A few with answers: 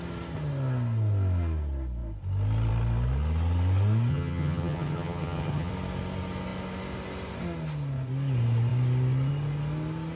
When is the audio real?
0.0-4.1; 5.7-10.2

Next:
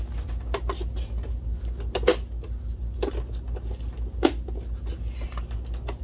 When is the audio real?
0.0-6.0

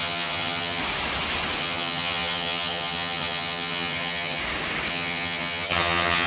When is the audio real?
0.8-1.6; 4.4-4.9

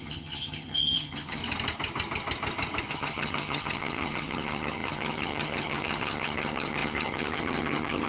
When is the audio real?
1.4-2.9

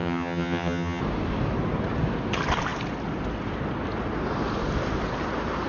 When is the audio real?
1.0-5.7